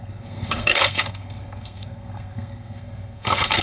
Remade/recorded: remade